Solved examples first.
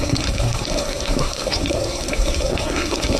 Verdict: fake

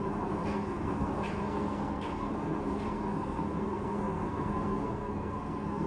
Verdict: fake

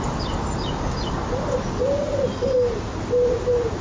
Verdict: real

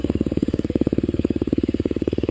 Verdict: fake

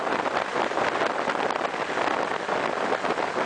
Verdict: real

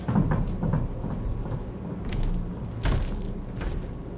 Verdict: real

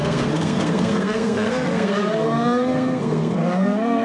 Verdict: fake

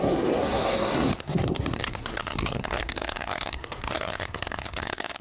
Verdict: fake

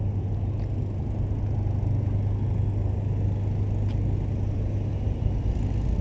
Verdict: real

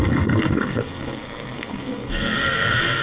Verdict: fake